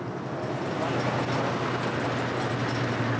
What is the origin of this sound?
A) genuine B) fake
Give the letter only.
A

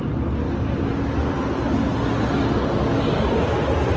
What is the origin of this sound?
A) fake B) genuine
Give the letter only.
B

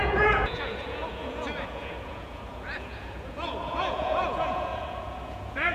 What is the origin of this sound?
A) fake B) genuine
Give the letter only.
A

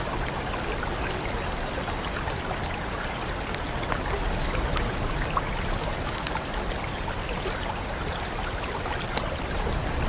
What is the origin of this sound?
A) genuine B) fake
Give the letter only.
A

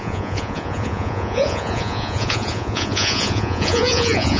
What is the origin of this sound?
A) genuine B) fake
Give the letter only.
B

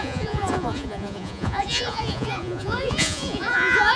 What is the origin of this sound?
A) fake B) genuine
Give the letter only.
A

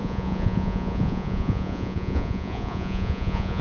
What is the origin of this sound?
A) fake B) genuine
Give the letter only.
A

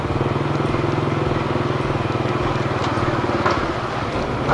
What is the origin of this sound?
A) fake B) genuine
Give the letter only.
B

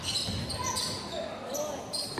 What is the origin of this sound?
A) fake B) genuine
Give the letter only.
B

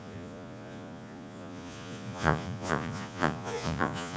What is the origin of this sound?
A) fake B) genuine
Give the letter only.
A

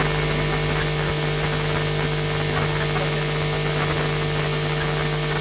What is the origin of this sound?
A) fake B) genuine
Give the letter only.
B